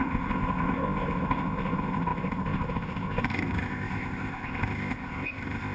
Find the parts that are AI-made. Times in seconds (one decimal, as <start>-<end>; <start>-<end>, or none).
0.0-5.7